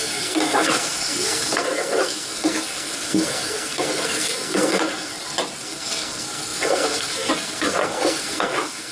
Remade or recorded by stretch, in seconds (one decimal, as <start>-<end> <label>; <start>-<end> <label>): 0.0-5.1 remade; 5.1-5.6 recorded; 5.6-8.9 remade

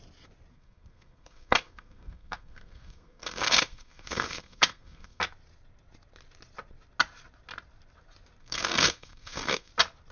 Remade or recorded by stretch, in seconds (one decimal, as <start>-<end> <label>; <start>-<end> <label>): 0.0-0.5 recorded; 0.5-5.2 remade; 5.2-8.4 recorded; 8.4-9.7 remade; 9.7-10.1 recorded

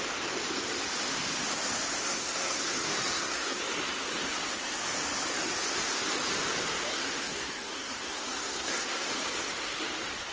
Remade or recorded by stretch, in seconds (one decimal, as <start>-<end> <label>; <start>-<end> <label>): 0.0-2.0 recorded; 2.0-3.6 remade; 3.6-6.9 recorded; 6.9-9.1 remade; 9.1-10.3 recorded